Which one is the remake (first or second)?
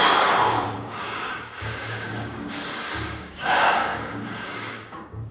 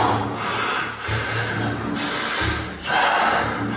first